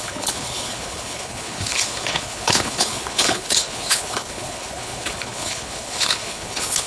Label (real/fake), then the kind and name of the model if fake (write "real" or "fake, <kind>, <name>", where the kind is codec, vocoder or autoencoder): fake, codec, HILCodec